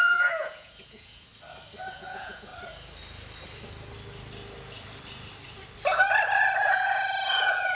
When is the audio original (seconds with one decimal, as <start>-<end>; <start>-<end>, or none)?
1.3-1.9; 2.5-6.6

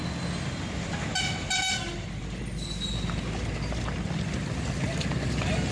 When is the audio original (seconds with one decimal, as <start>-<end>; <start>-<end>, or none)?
0.0-5.7

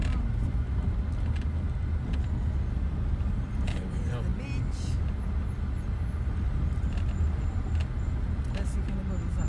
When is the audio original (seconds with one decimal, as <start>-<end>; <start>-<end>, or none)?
0.0-9.5

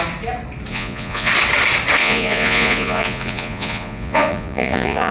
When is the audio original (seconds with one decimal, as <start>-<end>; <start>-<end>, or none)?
0.0-0.7; 1.3-2.0

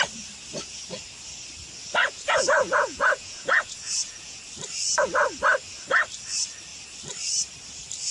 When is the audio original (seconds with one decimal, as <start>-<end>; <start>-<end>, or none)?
0.0-2.0; 4.4-8.1